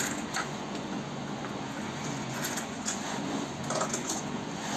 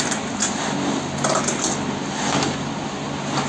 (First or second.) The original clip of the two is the second